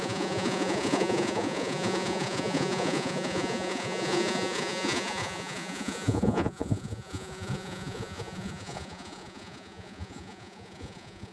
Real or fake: fake